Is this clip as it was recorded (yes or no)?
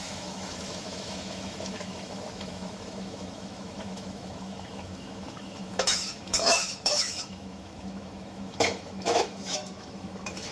no